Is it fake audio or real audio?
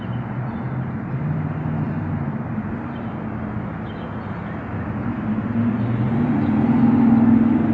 real